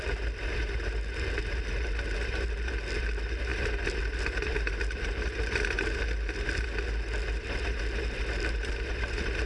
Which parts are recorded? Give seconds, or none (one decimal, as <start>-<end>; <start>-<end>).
0.0-9.5